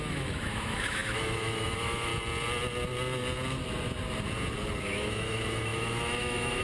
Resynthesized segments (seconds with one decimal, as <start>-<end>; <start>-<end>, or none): 0.0-2.1; 4.8-6.6